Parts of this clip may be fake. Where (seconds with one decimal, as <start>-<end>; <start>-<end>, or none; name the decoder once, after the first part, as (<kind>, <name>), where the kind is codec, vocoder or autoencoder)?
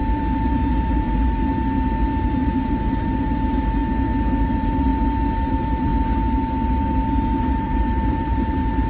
0.0-1.5 (vocoder, BigVGAN v2); 2.2-3.8; 4.4-4.9; 5.4-5.9; 7.4-8.9